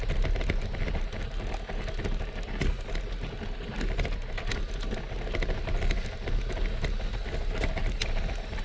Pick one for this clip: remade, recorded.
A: recorded